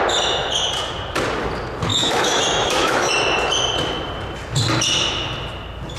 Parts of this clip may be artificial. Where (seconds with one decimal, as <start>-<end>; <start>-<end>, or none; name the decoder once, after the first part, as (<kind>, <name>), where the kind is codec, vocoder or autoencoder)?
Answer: 1.9-3.1 (autoencoder, DAC-VAE)